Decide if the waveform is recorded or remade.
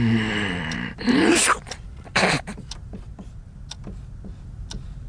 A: recorded